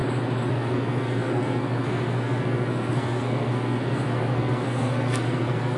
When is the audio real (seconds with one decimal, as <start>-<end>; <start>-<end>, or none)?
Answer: 0.0-0.5